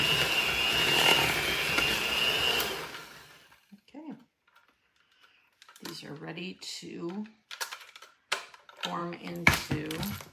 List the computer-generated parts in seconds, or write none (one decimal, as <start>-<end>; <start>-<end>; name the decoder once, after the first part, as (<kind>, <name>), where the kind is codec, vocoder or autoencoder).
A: 9.0-9.7 (codec, DAC)